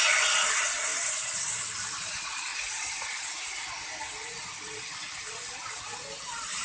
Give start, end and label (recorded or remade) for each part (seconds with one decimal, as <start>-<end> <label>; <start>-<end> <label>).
0.0-6.6 recorded